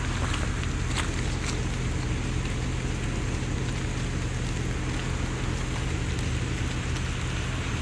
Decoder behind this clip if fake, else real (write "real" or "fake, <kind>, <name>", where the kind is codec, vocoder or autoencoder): real